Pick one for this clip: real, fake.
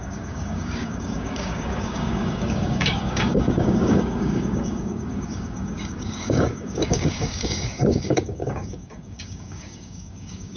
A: fake